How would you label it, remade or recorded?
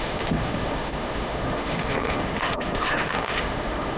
remade